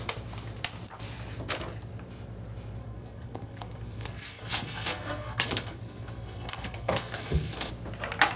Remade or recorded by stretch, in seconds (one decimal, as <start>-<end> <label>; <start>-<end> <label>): 0.0-2.8 recorded; 2.8-7.7 remade; 7.7-8.4 recorded